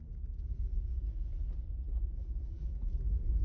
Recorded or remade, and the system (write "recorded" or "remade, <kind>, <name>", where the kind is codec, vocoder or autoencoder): recorded